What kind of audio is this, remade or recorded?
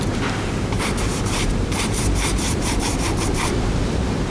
remade